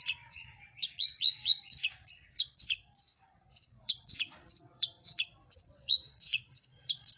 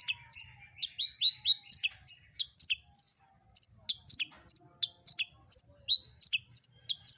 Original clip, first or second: second